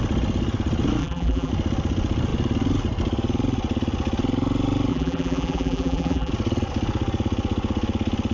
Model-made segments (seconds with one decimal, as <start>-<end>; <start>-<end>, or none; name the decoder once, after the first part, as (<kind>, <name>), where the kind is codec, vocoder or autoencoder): 1.0-1.5 (vocoder, BigVGAN v2); 4.9-6.3

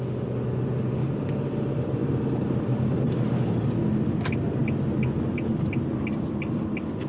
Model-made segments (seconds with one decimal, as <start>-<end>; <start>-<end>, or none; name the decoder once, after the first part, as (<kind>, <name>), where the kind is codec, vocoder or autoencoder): 1.0-3.5 (vocoder, BigVGAN v2)

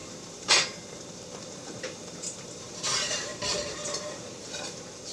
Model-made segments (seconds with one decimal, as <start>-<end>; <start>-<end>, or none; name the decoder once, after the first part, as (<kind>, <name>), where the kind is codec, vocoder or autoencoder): 0.0-5.1 (vocoder, BigVGAN v2)

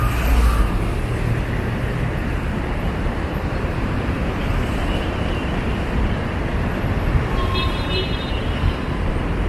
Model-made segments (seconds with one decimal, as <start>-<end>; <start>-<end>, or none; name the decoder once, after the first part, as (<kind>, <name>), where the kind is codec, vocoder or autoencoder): 1.6-6.4 (vocoder, BigVGAN v2); 7.6-9.1

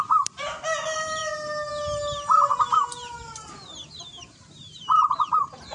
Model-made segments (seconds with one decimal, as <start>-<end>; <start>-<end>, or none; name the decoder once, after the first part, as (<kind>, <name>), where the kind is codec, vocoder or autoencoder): 2.5-4.8 (vocoder, BigVGAN v2)

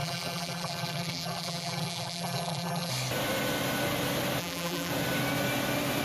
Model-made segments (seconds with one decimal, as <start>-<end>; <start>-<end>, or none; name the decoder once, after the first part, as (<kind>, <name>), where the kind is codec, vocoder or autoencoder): 0.0-2.9 (vocoder, BigVGAN v2); 4.4-4.9